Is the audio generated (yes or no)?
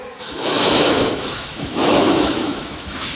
yes